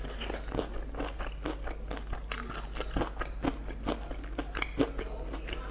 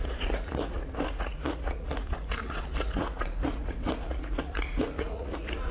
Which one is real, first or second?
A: first